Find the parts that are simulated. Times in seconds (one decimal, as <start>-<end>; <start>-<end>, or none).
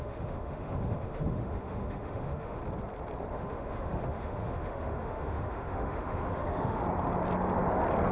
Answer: 0.0-2.6; 3.3-6.8